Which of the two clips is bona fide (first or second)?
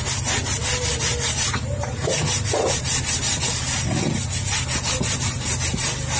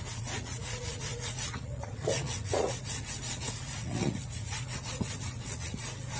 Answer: first